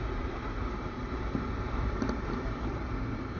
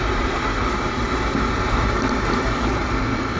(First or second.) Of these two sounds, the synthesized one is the first